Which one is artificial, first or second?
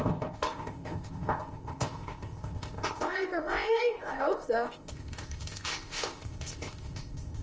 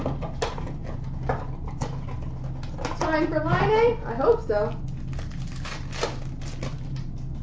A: first